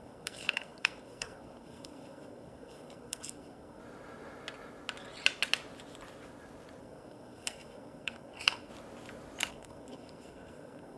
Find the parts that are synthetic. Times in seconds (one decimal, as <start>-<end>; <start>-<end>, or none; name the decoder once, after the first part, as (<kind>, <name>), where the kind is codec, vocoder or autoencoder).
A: 0.0-3.8 (codec, SNAC); 6.8-8.7; 9.5-11.0